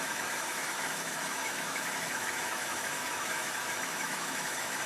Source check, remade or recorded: remade